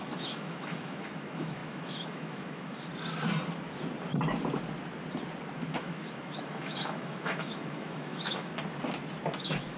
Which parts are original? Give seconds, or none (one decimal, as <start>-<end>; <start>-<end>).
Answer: 2.9-5.8; 8.5-9.4